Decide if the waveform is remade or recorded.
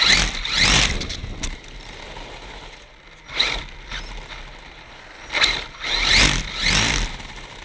recorded